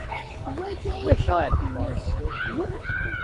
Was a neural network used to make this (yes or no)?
yes